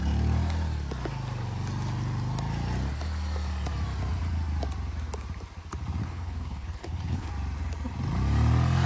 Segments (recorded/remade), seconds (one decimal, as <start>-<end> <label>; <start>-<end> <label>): 0.0-6.0 recorded; 6.0-7.3 remade; 7.3-8.9 recorded